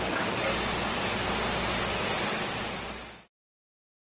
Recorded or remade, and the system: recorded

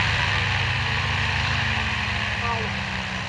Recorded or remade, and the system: recorded